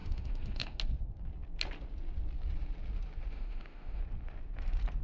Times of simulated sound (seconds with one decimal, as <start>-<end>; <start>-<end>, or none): 0.0-0.8; 3.3-4.0

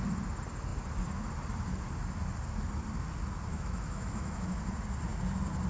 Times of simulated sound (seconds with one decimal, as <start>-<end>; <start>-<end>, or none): 3.5-4.6

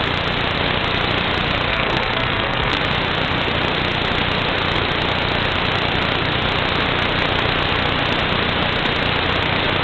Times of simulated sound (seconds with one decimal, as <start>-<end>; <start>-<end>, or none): 1.7-2.8

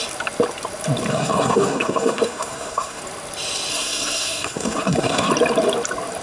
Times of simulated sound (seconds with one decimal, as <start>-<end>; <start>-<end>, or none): 1.1-3.0; 3.7-5.3

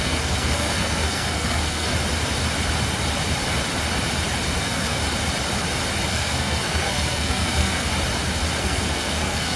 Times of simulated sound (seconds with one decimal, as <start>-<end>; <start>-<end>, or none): 0.0-1.9; 4.6-5.0; 6.1-7.9; 8.6-9.6